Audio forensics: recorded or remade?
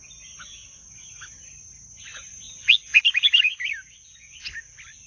recorded